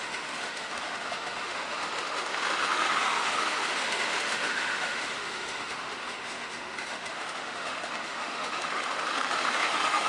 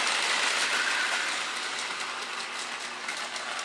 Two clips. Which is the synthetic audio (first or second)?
first